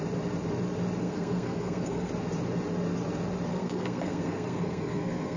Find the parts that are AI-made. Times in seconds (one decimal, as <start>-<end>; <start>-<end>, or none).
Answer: 1.0-2.1; 3.5-5.4